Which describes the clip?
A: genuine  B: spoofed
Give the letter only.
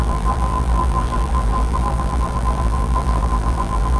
B